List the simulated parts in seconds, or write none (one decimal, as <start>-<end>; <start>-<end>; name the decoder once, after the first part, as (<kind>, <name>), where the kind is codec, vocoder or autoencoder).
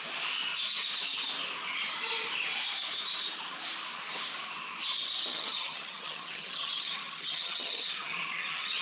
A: 5.3-8.8 (vocoder, HiFi-GAN)